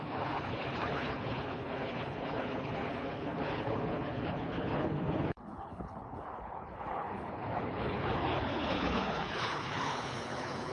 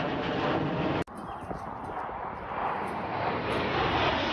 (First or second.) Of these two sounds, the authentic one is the second